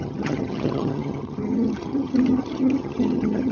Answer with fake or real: fake